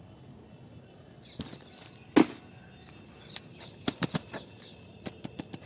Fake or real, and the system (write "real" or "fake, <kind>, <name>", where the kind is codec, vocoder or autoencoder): real